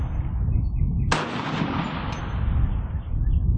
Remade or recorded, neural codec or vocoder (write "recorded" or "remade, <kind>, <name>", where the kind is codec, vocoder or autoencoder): recorded